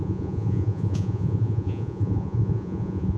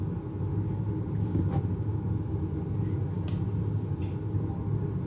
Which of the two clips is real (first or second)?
second